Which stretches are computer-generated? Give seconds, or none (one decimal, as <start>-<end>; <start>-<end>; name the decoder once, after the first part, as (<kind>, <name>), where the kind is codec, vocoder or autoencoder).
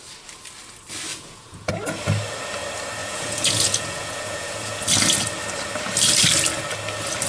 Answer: 1.1-1.7 (vocoder, Vocos); 3.0-4.8